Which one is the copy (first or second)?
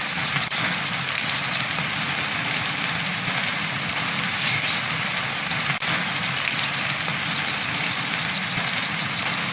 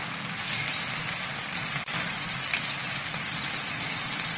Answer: first